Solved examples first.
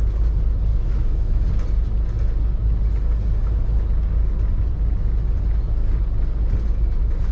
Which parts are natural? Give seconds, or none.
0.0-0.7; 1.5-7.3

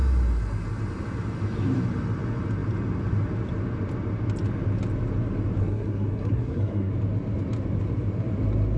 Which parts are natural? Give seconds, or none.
0.0-5.6; 6.9-8.8

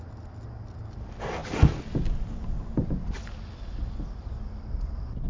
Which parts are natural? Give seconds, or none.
0.0-5.3